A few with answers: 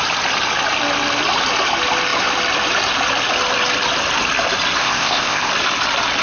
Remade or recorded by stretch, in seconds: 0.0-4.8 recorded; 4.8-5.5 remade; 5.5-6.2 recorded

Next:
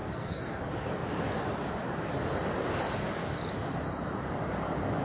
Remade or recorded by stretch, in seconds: 0.0-0.6 remade; 0.6-5.0 recorded

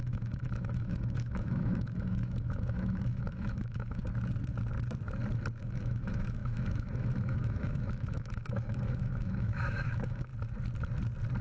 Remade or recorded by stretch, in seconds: 0.0-4.0 remade; 4.0-5.6 recorded; 5.6-10.3 remade; 10.3-11.4 recorded

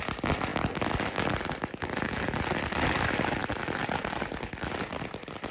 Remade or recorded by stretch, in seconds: 0.0-3.4 recorded; 3.4-5.5 remade

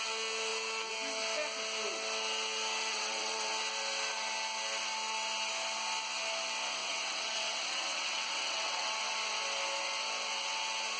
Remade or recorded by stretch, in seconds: 0.0-2.9 recorded; 2.9-3.5 remade; 3.5-6.8 recorded; 6.8-9.0 remade; 9.0-11.0 recorded

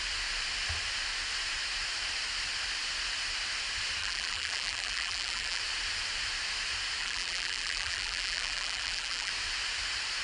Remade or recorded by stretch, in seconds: 0.0-4.0 recorded; 4.0-5.6 remade; 5.6-7.0 recorded; 7.0-9.3 remade; 9.3-10.2 recorded